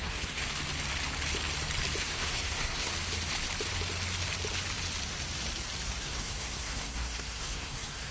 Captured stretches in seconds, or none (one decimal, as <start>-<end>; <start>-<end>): 0.4-2.0; 2.9-6.0